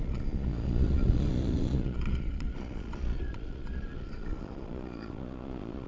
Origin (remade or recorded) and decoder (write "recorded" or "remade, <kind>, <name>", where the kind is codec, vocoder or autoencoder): remade, vocoder, Vocos